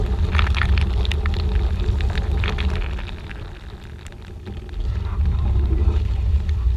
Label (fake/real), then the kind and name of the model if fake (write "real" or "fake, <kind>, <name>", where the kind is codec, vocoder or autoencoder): real